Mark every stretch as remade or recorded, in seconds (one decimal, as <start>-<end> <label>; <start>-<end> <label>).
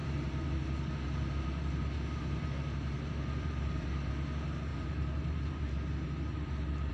0.0-4.1 remade; 4.1-4.7 recorded; 4.7-6.9 remade